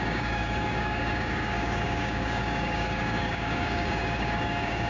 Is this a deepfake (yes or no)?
yes